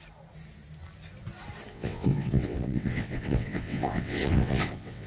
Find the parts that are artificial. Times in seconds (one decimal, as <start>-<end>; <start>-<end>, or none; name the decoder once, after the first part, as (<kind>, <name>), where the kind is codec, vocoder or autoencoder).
1.7-5.1 (vocoder, WaveNeXt)